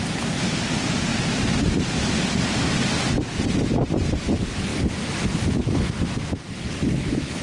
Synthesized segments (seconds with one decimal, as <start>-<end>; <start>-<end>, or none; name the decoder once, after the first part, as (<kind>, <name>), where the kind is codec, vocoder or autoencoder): 6.7-7.4 (codec, HILCodec)